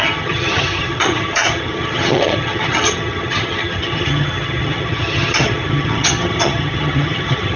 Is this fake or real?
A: fake